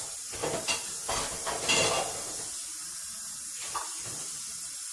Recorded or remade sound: recorded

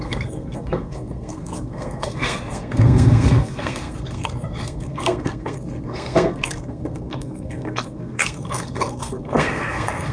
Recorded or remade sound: remade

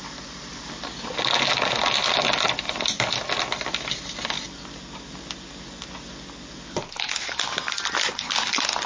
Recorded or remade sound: recorded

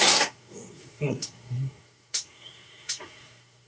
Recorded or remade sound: remade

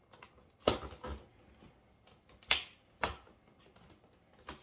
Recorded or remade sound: recorded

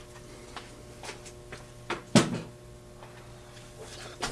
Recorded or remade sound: recorded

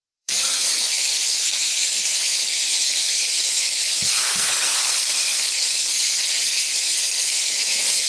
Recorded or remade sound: remade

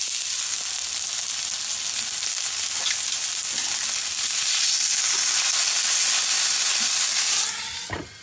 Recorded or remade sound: recorded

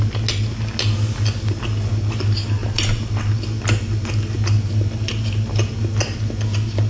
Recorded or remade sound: recorded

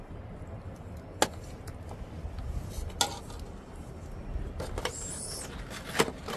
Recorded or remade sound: recorded